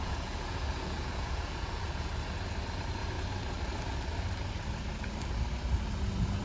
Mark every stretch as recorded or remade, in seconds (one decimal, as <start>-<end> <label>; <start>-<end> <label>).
0.0-2.1 remade; 2.1-6.4 recorded